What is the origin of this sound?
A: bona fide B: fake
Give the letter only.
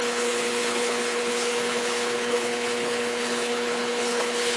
B